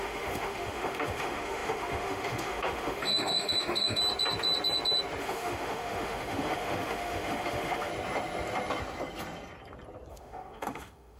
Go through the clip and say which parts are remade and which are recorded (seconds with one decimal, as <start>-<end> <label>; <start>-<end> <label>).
0.0-4.0 remade; 4.0-5.2 recorded; 5.2-7.9 remade; 7.9-10.1 recorded; 10.1-11.2 remade